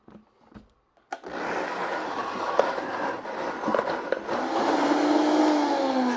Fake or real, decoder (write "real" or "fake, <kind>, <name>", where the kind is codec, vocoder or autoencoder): real